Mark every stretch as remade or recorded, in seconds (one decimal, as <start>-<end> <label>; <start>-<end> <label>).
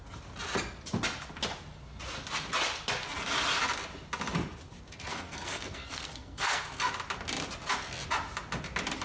0.0-5.1 recorded; 5.1-6.9 remade; 6.9-9.0 recorded